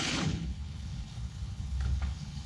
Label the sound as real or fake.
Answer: fake